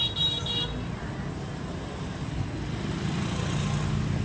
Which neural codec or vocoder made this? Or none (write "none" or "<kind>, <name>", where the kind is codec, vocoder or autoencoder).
none